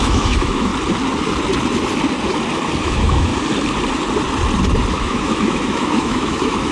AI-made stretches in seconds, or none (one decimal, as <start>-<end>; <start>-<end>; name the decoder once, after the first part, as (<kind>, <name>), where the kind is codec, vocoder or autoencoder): 0.0-0.7 (autoencoder, DAC-VAE); 2.8-3.3; 4.9-6.7